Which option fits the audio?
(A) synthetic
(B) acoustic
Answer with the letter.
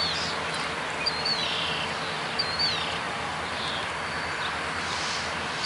A